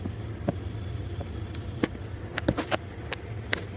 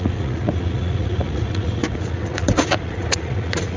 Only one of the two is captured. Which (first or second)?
first